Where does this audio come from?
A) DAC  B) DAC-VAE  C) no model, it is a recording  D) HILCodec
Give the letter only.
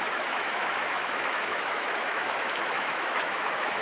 B